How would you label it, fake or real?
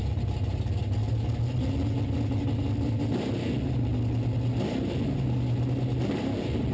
real